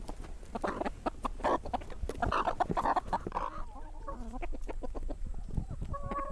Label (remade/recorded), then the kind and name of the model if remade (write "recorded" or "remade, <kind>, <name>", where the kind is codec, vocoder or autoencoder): recorded